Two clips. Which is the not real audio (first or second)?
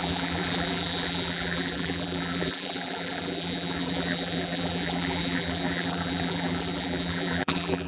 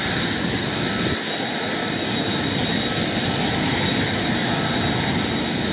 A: first